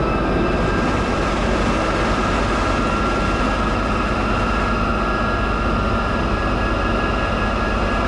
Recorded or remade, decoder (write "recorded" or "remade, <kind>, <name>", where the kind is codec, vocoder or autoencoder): recorded